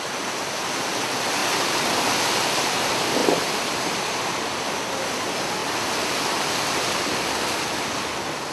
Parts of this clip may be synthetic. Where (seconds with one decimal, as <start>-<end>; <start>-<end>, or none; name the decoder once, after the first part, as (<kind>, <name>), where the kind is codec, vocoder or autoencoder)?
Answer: 1.4-2.0 (vocoder, BigVGAN v2); 3.2-3.8